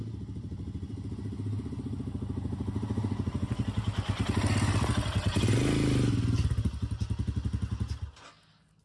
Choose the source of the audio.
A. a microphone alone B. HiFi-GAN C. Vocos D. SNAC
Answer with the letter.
A